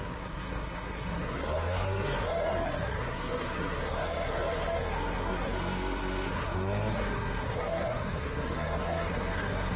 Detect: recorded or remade remade